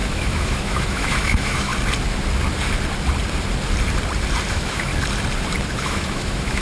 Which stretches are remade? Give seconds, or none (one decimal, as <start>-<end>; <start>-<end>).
0.0-1.7; 4.5-4.9; 5.7-6.6